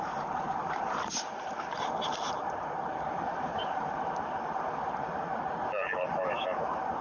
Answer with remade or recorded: remade